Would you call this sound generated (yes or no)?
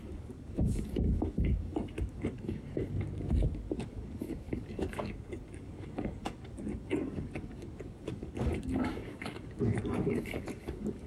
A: yes